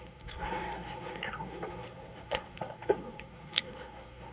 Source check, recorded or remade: remade